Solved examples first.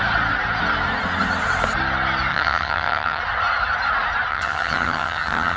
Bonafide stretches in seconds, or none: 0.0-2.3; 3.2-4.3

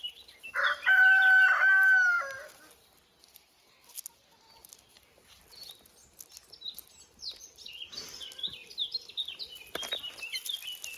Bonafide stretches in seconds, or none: 0.0-0.8; 1.6-11.0

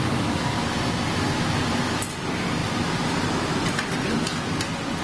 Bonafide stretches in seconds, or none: 0.0-5.0

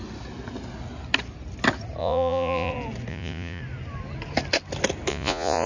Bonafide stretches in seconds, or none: 0.0-2.0; 2.7-3.1; 3.6-5.1

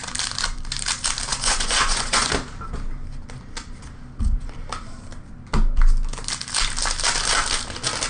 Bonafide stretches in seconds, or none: 0.0-1.3; 2.3-8.1

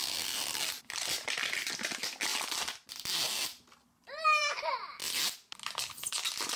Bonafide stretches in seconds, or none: 0.0-6.6